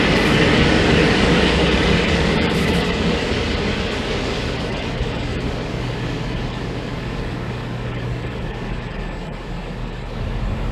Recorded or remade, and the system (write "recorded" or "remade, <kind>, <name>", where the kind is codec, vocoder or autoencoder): remade, codec, DAC